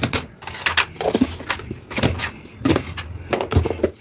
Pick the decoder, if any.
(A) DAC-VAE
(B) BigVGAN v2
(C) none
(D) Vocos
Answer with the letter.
C